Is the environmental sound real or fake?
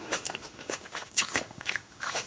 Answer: fake